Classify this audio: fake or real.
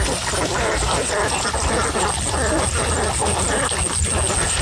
real